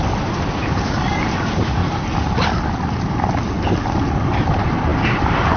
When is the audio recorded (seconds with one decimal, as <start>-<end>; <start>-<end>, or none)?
1.8-3.7